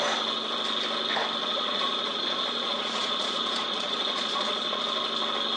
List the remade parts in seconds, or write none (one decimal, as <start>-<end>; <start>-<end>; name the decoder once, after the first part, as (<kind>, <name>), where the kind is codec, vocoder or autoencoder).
1.4-4.8 (vocoder, Vocos)